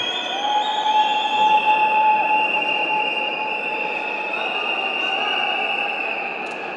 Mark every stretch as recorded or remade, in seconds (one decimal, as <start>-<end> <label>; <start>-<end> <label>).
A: 0.0-0.7 recorded; 0.7-4.4 remade; 4.4-6.8 recorded